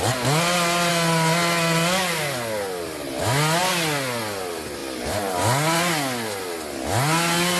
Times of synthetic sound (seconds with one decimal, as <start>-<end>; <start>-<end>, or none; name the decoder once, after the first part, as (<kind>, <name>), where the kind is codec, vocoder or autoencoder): none